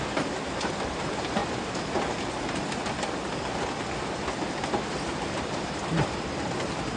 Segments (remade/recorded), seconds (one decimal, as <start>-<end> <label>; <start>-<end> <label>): 0.0-1.4 remade; 1.4-4.9 recorded; 4.9-7.0 remade